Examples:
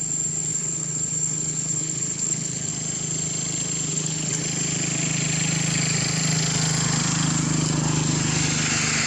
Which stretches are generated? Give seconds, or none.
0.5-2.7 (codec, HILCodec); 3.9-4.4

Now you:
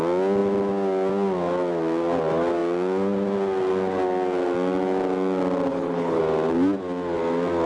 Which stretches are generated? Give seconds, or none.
5.7-6.2 (codec, HILCodec)

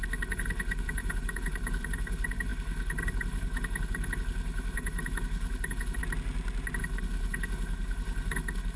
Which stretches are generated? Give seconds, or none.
0.0-6.0 (codec, HILCodec); 6.8-8.8

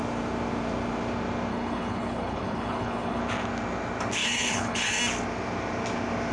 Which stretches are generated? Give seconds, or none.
1.5-3.2 (codec, HILCodec); 4.2-5.0

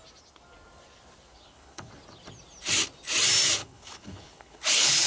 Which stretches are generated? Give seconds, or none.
1.3-1.9 (codec, HILCodec); 3.6-5.1

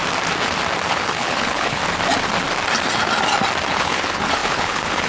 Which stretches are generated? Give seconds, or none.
0.9-1.8 (codec, HILCodec); 3.7-5.1

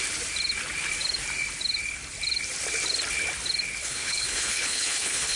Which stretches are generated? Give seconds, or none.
3.8-5.4 (codec, HILCodec)